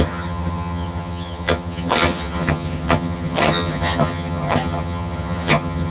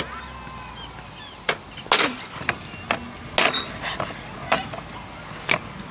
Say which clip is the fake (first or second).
first